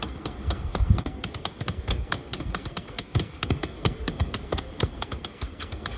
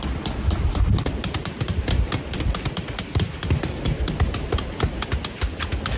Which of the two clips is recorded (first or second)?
second